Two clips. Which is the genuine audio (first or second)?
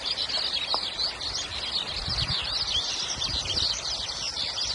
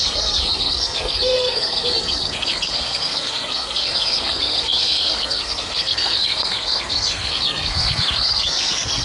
first